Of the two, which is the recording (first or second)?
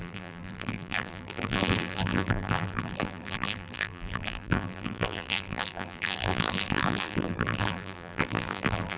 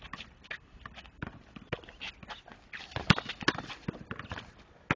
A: second